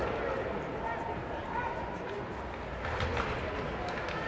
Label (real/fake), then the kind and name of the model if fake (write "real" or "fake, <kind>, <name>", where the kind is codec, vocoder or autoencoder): real